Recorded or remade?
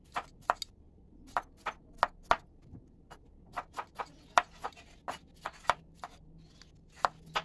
recorded